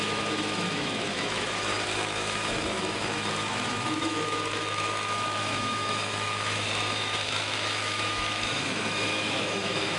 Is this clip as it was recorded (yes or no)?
no